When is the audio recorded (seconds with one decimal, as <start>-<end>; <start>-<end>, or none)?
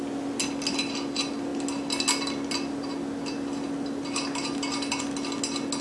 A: 0.0-5.8